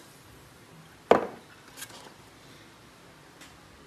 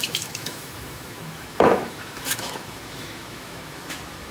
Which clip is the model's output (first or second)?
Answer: second